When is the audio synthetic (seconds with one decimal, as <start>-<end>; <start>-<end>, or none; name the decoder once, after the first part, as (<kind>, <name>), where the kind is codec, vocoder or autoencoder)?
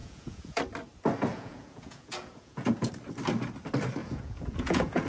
0.0-0.6 (vocoder, Vocos); 1.3-2.9; 4.0-5.1